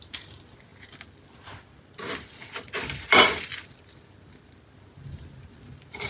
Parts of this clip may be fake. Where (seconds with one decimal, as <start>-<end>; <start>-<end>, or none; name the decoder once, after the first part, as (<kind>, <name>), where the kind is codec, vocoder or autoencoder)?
none